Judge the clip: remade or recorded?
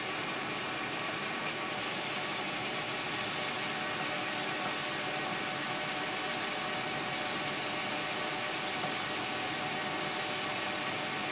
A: recorded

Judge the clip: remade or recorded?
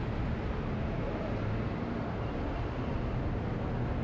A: recorded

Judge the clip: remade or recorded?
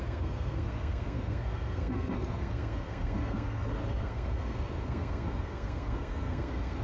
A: remade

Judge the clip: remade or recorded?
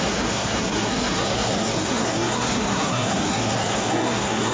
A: remade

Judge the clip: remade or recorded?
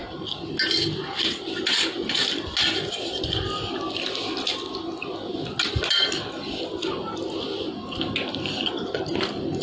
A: recorded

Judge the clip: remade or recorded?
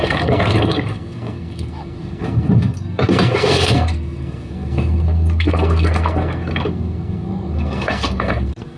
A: remade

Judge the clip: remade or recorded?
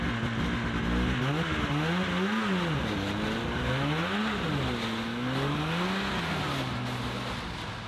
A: recorded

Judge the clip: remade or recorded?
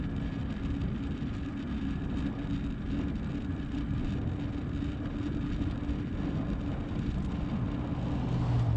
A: recorded